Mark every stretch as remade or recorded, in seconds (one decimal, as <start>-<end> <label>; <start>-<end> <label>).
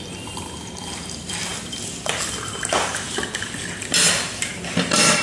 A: 0.0-5.2 recorded